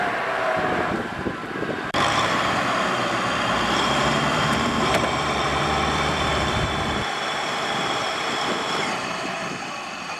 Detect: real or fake fake